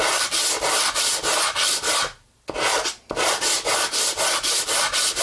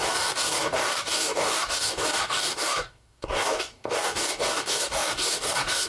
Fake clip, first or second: second